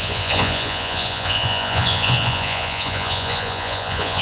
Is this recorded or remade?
remade